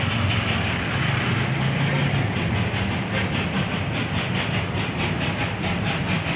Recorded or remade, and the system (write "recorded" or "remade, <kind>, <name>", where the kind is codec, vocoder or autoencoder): recorded